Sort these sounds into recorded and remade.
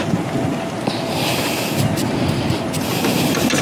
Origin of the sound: recorded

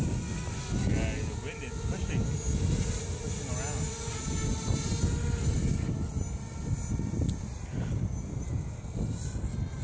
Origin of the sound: recorded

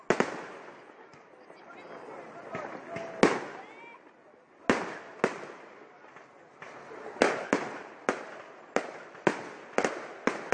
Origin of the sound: recorded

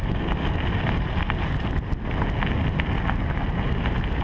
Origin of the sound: recorded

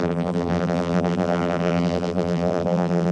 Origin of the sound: remade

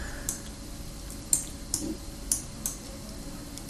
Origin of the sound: recorded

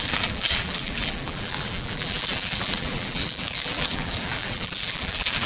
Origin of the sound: remade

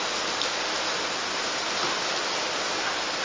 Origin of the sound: recorded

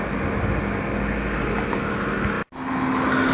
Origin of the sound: recorded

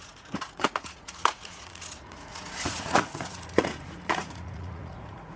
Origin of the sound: remade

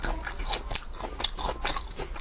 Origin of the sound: recorded